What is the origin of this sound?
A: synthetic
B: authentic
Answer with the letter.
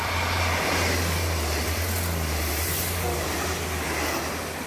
B